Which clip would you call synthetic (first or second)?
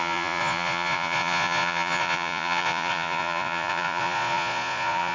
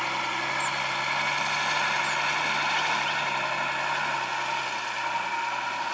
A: first